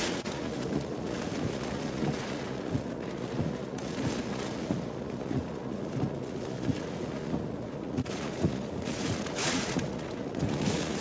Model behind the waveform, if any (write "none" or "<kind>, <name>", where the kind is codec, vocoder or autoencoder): vocoder, Vocos